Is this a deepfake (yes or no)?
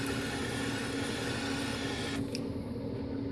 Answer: no